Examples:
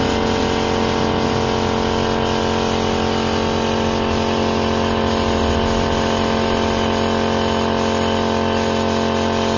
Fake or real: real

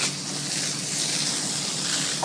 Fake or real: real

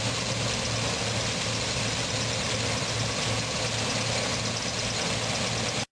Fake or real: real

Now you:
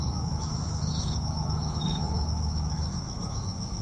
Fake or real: fake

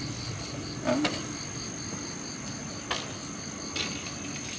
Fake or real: real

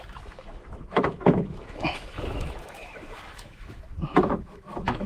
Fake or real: fake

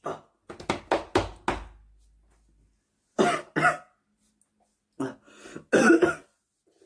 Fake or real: real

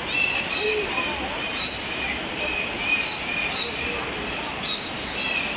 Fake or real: real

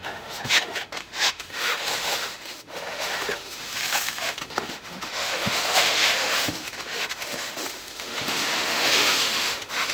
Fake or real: fake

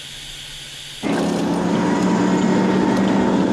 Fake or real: real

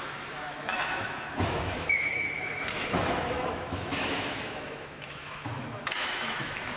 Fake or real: fake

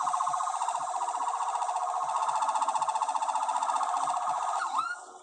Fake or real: real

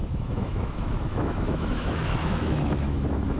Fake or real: fake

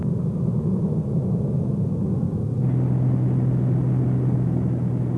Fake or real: real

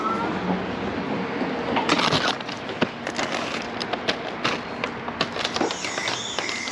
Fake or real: real